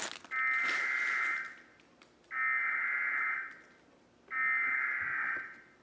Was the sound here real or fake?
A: real